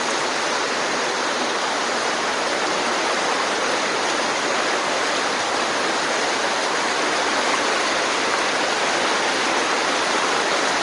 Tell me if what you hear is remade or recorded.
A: recorded